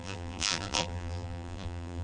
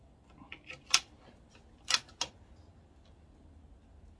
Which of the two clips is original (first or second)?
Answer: second